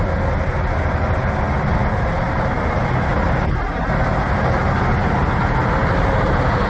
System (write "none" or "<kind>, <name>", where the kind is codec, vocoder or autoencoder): none